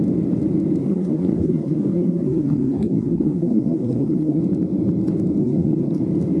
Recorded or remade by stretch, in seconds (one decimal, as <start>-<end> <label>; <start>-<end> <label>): 0.0-0.8 recorded; 0.8-4.4 remade; 4.4-5.4 recorded; 5.4-6.0 remade; 6.0-6.4 recorded